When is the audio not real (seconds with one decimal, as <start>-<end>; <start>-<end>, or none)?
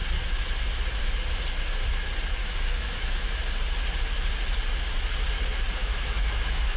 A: 2.4-3.4; 5.8-6.8